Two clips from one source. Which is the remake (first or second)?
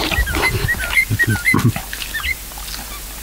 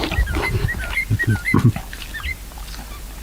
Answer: second